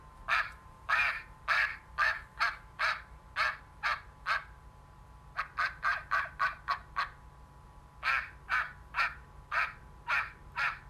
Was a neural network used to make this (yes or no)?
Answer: yes